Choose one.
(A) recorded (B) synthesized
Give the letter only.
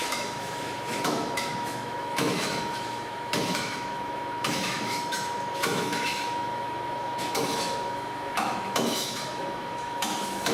B